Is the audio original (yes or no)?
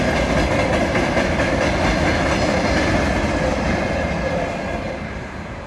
yes